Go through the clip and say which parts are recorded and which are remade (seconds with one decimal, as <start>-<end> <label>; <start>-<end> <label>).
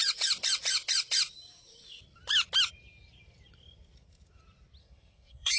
0.0-4.8 recorded; 4.8-5.6 remade